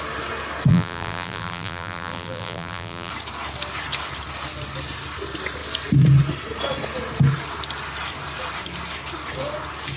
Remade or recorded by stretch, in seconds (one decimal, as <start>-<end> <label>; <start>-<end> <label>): 0.0-0.7 recorded; 0.7-3.1 remade; 3.1-10.0 recorded